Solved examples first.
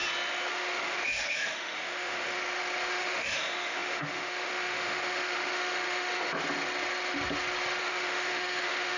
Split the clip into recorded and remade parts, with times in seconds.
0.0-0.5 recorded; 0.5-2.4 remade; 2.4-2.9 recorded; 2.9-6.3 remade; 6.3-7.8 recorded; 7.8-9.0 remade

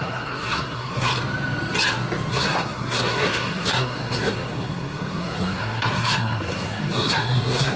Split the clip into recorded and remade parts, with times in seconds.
0.0-1.1 remade; 1.1-2.3 recorded; 2.3-7.8 remade

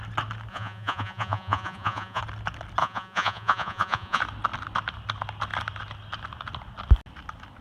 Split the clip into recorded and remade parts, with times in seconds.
0.0-0.5 recorded; 0.5-2.2 remade; 2.2-2.8 recorded; 2.8-4.2 remade; 4.2-7.6 recorded

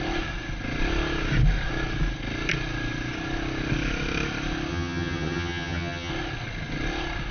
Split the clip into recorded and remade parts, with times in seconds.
0.0-4.7 recorded; 4.7-6.1 remade; 6.1-7.3 recorded

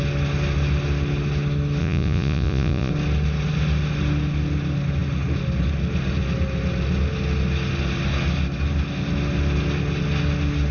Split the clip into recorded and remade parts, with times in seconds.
0.0-1.8 recorded; 1.8-2.9 remade; 2.9-10.7 recorded

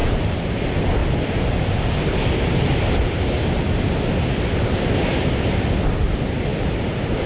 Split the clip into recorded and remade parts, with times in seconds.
0.0-0.5 remade; 0.5-1.0 recorded; 1.0-2.6 remade; 2.6-7.3 recorded

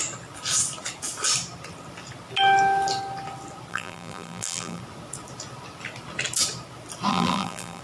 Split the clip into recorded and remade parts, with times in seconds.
0.0-3.7 recorded; 3.7-4.8 remade; 4.8-7.1 recorded; 7.1-7.8 remade

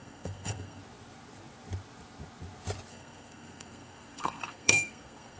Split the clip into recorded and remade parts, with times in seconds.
0.0-0.8 remade; 0.8-2.9 recorded; 2.9-5.4 remade